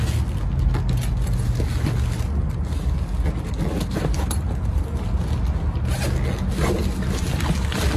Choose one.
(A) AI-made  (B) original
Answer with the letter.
B